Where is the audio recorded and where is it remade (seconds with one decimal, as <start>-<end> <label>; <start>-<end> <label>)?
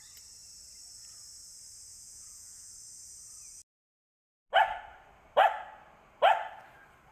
0.0-1.9 recorded; 1.9-2.7 remade; 2.7-7.1 recorded